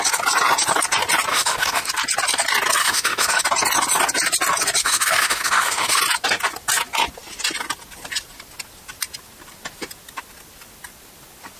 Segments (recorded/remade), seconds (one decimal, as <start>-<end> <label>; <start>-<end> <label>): 0.0-1.3 recorded; 1.3-1.9 remade; 1.9-2.8 recorded; 2.8-3.4 remade; 3.4-4.8 recorded; 4.8-6.0 remade; 6.0-11.6 recorded